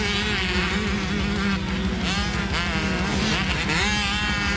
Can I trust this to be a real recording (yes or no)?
yes